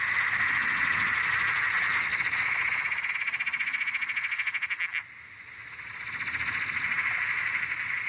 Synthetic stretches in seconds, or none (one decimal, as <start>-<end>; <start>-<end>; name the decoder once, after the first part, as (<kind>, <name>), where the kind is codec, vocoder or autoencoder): none